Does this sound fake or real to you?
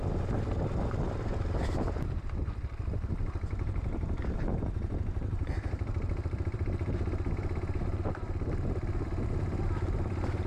fake